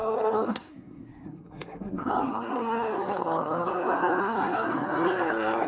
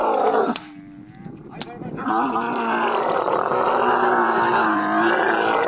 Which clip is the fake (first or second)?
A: first